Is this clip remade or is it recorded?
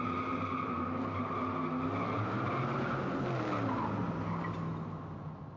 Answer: recorded